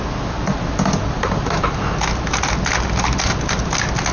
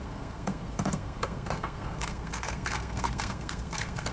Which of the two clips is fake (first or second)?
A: second